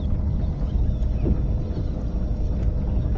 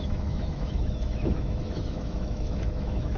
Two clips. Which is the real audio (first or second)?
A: first